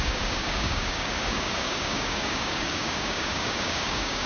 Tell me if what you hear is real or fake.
fake